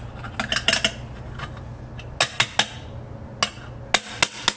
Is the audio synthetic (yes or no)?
no